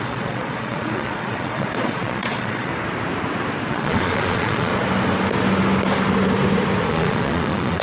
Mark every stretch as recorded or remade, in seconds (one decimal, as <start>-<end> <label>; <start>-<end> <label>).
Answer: 0.0-2.7 remade; 2.7-3.7 recorded; 3.7-4.7 remade; 4.7-6.9 recorded; 6.9-7.8 remade